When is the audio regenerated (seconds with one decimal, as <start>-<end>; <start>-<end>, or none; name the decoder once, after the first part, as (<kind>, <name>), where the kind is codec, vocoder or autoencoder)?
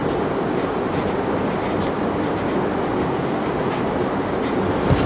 3.0-3.8 (codec, SNAC)